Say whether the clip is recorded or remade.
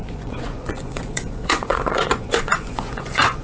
remade